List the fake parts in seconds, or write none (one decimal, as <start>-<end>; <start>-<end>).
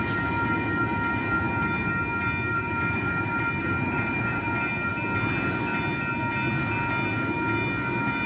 2.5-4.5